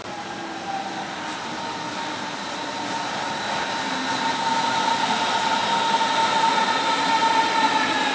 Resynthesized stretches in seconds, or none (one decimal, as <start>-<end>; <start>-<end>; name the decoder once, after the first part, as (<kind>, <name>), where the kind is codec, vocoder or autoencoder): 0.0-8.1 (vocoder, BigVGAN v2)